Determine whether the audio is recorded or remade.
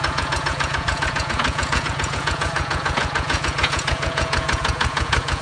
remade